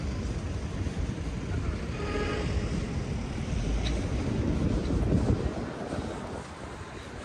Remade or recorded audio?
recorded